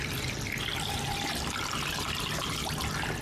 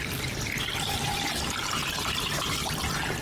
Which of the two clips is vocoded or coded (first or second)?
second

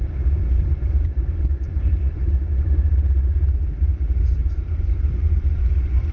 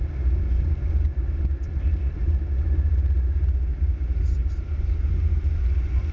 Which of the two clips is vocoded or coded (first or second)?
first